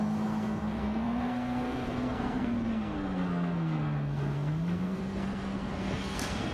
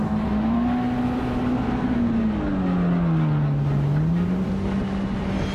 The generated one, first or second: first